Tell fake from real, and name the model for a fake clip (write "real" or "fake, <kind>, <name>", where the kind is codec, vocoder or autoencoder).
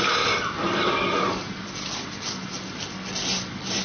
real